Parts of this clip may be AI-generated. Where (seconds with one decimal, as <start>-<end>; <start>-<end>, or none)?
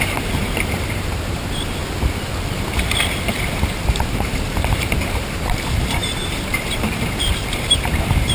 0.0-1.8; 3.7-8.3